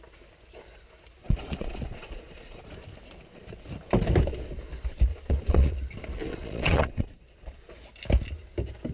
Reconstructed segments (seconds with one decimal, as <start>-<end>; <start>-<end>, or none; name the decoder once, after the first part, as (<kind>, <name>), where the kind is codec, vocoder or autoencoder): 1.2-2.7 (vocoder, Vocos); 5.1-5.8; 6.3-7.7